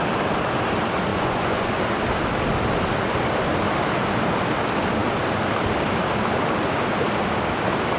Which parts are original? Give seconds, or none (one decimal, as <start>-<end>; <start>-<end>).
0.0-1.1; 1.7-8.0